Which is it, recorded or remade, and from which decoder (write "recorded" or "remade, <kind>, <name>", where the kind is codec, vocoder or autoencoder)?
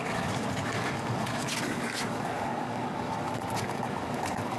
remade, codec, DAC